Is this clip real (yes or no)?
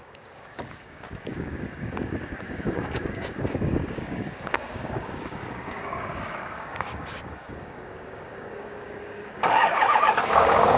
no